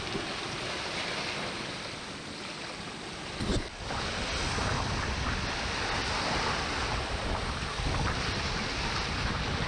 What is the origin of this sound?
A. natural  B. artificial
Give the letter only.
A